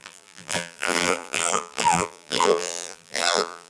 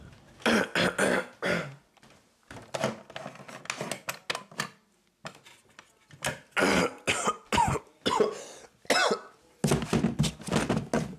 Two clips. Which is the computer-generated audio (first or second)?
first